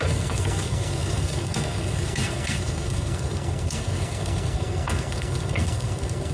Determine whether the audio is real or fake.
fake